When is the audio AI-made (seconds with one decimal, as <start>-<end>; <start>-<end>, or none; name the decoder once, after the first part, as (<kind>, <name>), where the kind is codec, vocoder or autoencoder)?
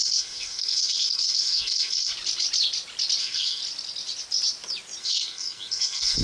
0.0-2.1 (codec, SNAC); 3.2-3.6; 5.0-6.2